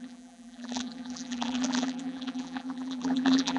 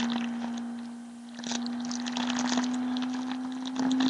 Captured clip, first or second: second